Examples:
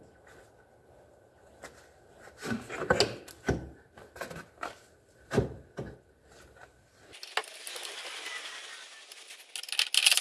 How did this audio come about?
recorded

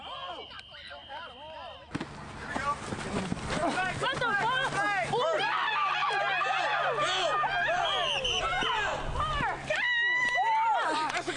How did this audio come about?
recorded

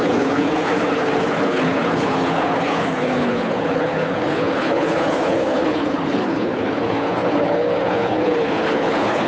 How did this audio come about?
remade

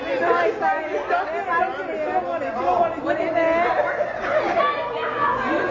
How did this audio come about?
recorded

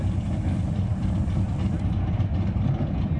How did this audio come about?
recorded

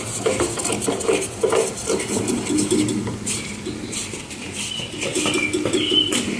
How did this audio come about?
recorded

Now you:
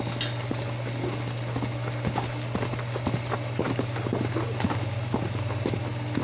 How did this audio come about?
recorded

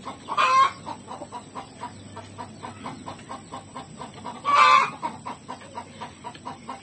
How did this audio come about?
recorded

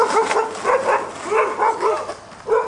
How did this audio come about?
recorded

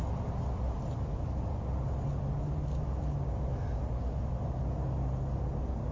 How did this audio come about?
recorded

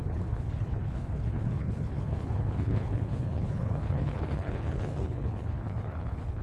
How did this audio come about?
remade